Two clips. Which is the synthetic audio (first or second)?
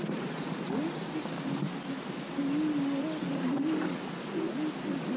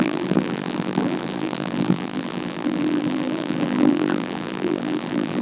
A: second